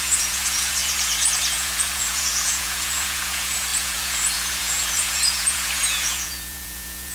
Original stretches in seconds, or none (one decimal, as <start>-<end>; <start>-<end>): none